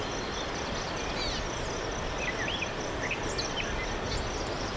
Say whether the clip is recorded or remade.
recorded